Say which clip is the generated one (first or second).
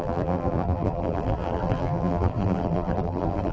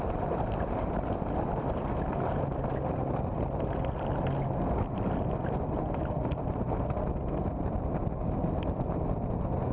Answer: first